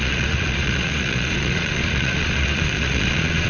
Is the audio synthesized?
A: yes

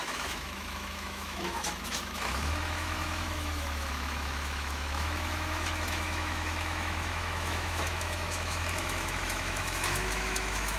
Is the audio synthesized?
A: yes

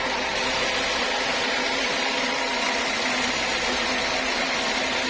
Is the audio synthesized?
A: no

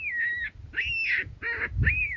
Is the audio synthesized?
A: no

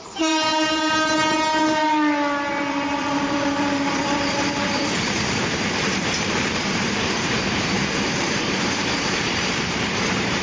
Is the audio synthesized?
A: yes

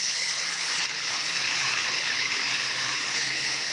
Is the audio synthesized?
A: yes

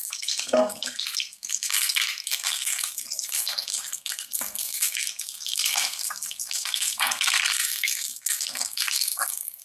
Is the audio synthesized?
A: yes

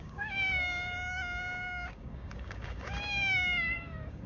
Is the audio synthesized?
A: yes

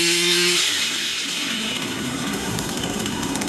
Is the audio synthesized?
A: yes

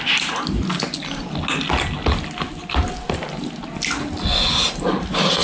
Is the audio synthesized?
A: no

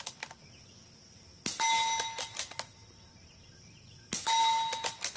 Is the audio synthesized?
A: no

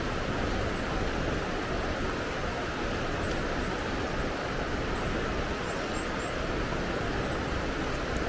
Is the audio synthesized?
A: no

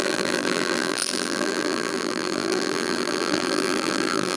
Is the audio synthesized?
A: yes